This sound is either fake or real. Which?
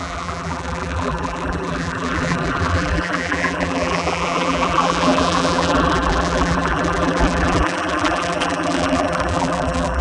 fake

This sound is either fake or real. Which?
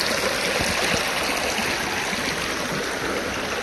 real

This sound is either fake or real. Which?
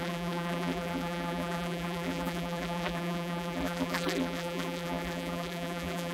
fake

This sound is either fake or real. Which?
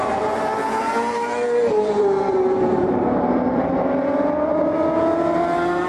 fake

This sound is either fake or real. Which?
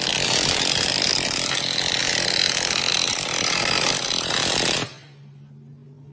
real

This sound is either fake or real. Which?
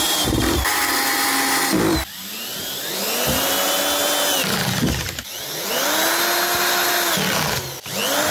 real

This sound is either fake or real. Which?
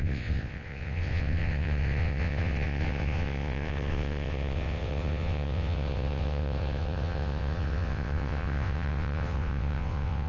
fake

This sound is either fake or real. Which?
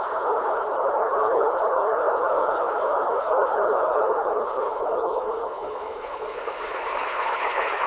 fake